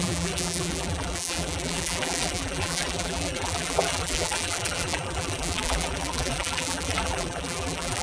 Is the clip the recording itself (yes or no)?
no